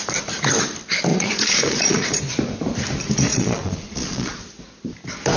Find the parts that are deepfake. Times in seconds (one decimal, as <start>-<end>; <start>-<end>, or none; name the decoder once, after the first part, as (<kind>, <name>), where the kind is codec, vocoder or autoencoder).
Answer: 1.1-2.2 (vocoder, Vocos); 3.3-4.4